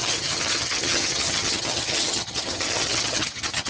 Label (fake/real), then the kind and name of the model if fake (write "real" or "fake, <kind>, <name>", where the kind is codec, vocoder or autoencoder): fake, vocoder, HiFi-GAN